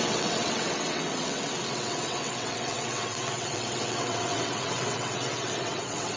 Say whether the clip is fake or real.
fake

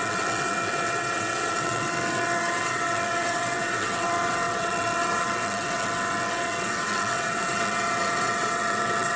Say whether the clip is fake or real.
fake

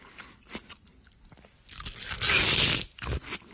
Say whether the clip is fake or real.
real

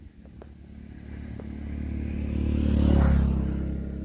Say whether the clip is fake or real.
real